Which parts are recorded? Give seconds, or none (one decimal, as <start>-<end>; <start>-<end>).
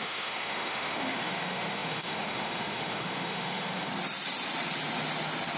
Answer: 3.9-5.6